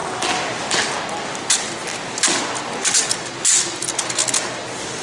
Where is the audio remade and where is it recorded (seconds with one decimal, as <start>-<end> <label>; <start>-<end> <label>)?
0.0-5.0 recorded